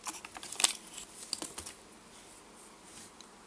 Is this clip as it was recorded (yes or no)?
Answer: yes